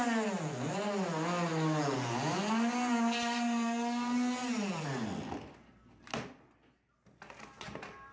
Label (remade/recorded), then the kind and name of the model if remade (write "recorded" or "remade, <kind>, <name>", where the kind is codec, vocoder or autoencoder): recorded